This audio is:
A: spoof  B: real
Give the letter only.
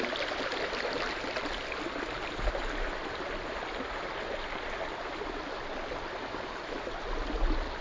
B